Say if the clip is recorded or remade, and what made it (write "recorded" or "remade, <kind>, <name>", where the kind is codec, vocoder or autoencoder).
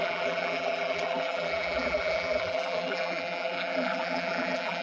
remade, vocoder, BigVGAN v2